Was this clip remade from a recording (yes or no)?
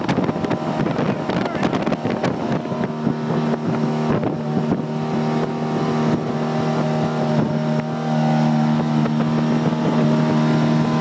no